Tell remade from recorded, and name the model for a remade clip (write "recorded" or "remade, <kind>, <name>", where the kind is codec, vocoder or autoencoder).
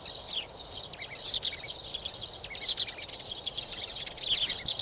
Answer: recorded